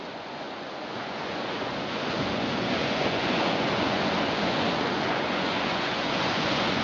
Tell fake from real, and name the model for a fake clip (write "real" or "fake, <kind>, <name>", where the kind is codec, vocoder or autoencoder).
fake, vocoder, Vocos